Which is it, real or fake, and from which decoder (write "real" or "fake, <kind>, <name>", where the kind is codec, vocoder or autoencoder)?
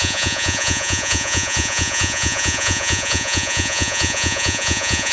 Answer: fake, vocoder, Vocos